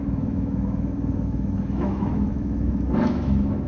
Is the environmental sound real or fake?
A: fake